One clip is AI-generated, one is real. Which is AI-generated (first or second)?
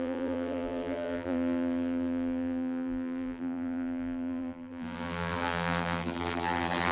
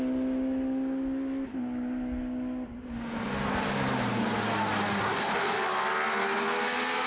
first